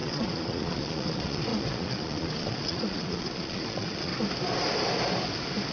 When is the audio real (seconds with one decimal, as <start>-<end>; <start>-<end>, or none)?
4.1-5.7